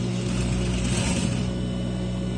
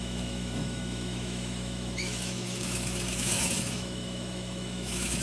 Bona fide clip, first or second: first